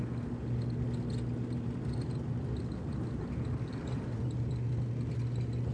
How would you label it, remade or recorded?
recorded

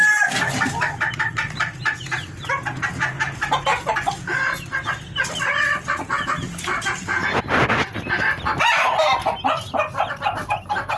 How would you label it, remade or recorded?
recorded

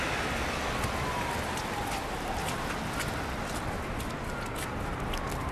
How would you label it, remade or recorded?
recorded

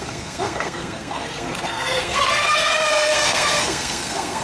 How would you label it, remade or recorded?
remade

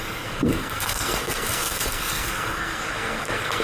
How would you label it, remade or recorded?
remade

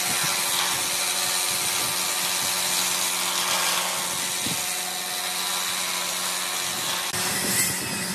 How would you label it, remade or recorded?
recorded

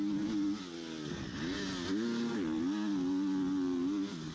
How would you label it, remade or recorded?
recorded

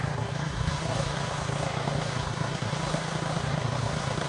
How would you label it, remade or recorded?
remade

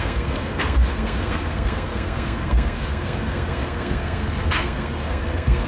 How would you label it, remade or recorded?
remade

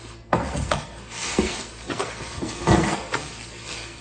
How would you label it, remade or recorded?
remade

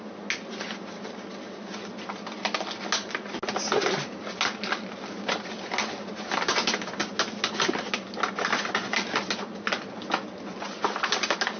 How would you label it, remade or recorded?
recorded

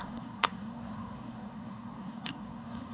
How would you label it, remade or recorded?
remade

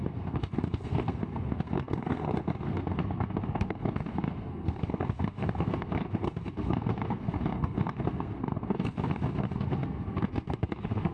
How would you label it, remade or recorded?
remade